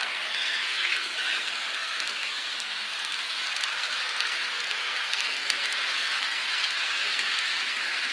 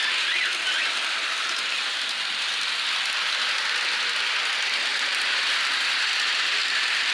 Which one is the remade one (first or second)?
first